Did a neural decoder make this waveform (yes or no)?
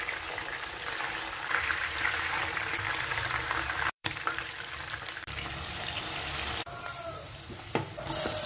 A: yes